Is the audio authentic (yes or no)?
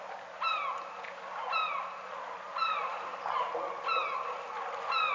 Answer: yes